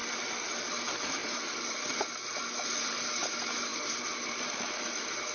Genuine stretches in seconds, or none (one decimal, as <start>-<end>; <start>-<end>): 0.0-5.3